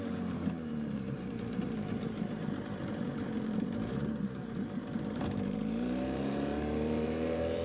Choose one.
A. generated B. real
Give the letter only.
A